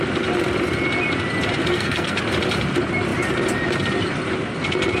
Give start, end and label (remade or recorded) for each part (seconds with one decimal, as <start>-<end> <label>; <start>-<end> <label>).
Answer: 0.0-1.7 recorded; 1.7-2.2 remade; 2.2-5.0 recorded